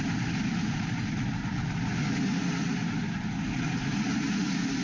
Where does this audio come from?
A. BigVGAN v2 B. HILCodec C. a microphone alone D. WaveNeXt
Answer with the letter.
C